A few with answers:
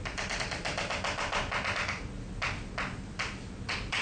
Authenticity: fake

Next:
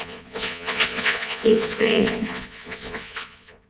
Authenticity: fake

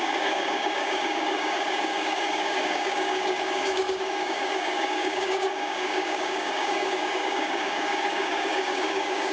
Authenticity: fake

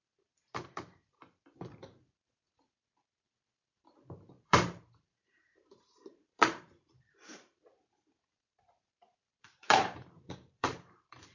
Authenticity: fake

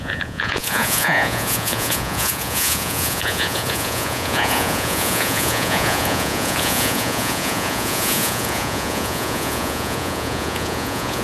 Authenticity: fake